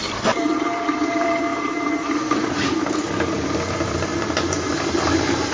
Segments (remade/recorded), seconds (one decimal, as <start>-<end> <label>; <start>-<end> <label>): 0.0-4.1 remade; 4.1-5.5 recorded